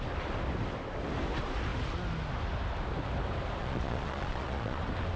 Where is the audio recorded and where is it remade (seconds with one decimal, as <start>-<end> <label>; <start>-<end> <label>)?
0.0-3.6 recorded; 3.6-4.8 remade; 4.8-5.2 recorded